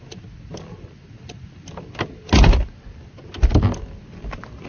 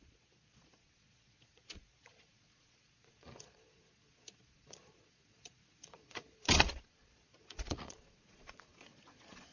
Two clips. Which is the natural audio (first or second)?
first